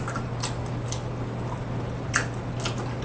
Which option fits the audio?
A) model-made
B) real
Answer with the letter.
B